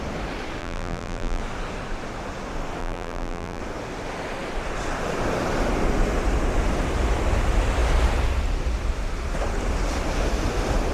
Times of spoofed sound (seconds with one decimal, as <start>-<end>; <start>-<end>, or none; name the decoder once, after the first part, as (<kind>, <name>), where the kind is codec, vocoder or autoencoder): 0.6-1.4 (vocoder, BigVGAN v2); 2.8-3.6